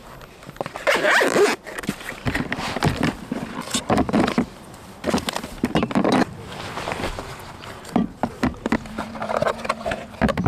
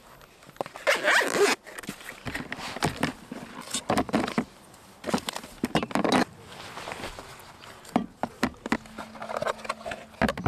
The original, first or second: second